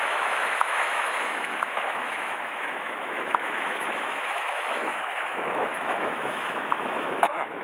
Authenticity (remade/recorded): remade